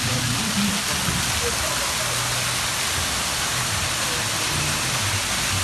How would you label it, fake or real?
real